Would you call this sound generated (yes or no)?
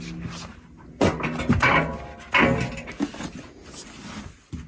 no